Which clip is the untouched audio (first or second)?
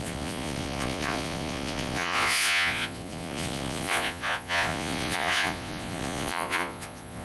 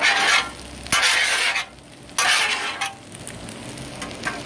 second